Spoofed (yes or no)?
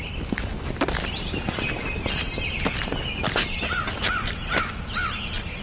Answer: no